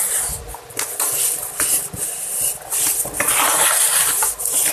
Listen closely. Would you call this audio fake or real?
real